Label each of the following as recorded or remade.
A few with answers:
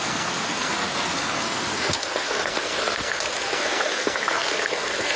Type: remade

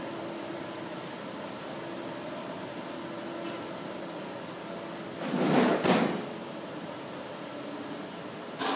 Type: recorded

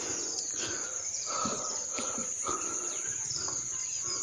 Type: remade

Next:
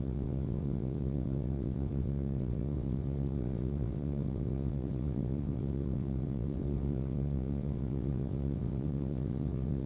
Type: remade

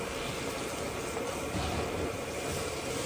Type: remade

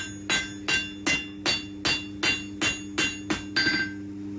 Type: recorded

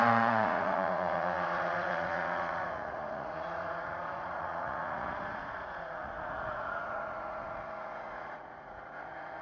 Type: remade